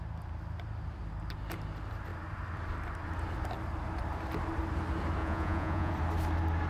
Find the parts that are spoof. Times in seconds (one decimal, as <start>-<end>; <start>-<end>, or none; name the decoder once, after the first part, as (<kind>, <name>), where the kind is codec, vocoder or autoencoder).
5.2-5.9 (vocoder, Vocos)